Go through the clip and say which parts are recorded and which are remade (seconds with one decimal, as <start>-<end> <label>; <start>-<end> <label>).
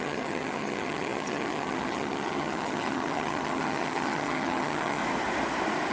0.0-5.0 remade; 5.0-5.9 recorded